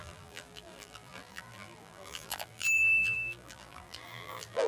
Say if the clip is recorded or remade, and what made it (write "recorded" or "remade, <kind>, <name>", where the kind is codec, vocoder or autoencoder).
remade, vocoder, BigVGAN v2